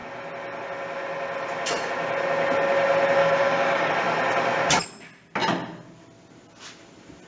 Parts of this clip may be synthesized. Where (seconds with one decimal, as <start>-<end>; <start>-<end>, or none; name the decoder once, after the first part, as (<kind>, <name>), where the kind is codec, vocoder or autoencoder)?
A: 3.2-3.9 (codec, DAC)

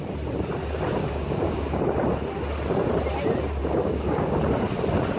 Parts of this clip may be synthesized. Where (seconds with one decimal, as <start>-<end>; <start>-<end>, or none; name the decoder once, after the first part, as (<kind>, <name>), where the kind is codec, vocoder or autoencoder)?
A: 1.0-1.8 (codec, DAC); 3.6-4.4

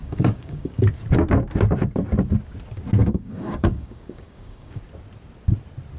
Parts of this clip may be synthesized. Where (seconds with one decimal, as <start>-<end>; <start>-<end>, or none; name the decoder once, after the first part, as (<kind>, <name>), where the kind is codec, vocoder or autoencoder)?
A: 0.0-0.8 (codec, DAC); 3.0-4.8

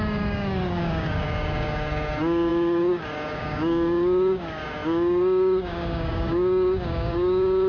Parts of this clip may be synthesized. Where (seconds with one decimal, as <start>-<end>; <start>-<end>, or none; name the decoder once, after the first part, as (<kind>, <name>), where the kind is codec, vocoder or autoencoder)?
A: 0.0-7.7 (codec, DAC)

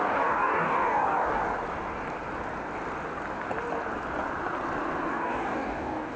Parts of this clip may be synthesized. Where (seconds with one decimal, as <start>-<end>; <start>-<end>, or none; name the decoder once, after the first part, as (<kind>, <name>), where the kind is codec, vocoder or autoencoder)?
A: 0.0-1.4 (codec, DAC); 5.1-6.2

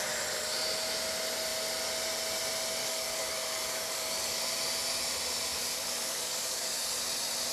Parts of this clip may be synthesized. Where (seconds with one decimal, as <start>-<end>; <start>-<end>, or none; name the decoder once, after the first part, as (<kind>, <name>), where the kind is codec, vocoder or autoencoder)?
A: 2.8-4.4 (codec, DAC); 5.5-7.0

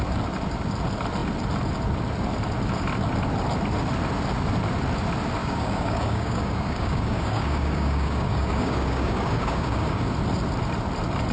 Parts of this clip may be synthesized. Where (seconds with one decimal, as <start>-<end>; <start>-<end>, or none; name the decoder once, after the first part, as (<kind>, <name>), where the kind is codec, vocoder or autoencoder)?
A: 5.4-10.1 (codec, DAC)

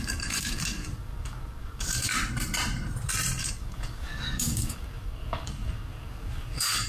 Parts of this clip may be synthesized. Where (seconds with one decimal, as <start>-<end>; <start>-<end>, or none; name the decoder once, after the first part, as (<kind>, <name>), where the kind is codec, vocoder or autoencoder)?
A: 0.0-2.1 (codec, DAC); 3.4-6.9